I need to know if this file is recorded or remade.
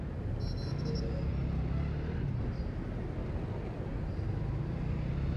recorded